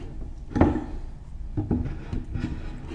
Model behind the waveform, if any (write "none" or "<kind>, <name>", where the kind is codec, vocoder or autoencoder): none